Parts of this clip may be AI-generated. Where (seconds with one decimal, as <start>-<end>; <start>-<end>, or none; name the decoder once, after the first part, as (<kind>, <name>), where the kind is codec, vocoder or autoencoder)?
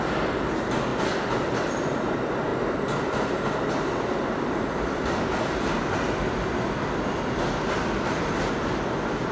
none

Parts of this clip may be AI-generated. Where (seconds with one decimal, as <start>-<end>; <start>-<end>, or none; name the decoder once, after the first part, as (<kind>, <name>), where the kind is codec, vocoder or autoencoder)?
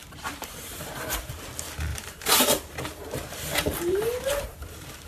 0.0-1.3 (vocoder, BigVGAN v2); 1.9-5.1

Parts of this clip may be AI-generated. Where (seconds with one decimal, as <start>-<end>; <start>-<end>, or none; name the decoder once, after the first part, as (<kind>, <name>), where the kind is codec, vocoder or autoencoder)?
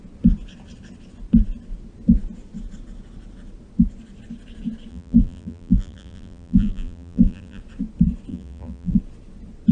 4.9-7.6 (vocoder, BigVGAN v2); 8.3-9.0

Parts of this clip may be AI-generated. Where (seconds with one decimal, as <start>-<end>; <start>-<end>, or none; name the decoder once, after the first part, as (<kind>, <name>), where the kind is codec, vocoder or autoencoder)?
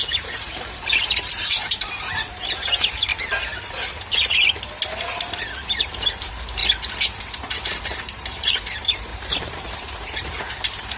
0.0-3.1 (vocoder, BigVGAN v2); 5.7-6.6; 7.6-11.0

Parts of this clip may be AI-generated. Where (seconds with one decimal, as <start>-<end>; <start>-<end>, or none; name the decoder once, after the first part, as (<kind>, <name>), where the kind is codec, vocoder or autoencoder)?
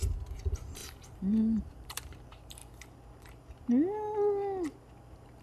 0.0-0.8 (vocoder, BigVGAN v2); 1.6-2.6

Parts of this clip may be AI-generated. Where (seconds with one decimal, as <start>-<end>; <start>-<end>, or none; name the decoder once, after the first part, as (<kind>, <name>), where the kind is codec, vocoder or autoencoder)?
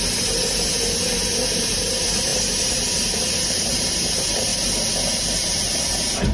0.0-4.5 (vocoder, BigVGAN v2); 5.2-6.3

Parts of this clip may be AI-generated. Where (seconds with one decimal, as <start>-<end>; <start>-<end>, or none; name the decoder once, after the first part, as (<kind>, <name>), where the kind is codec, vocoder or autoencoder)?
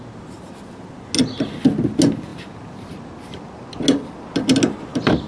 none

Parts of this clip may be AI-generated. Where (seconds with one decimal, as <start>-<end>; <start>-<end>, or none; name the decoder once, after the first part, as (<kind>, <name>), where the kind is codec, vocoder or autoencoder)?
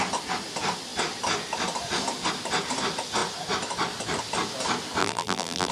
5.0-5.7 (vocoder, BigVGAN v2)